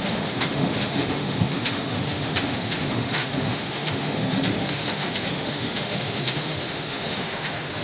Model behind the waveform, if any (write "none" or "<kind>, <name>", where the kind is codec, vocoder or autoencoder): autoencoder, DAC-VAE